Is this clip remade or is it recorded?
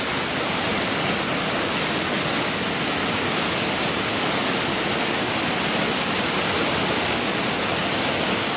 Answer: recorded